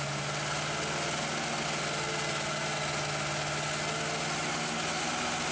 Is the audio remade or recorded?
recorded